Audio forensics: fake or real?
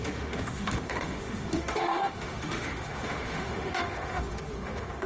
fake